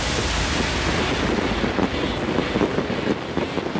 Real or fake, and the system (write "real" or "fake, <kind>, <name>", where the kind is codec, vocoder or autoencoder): real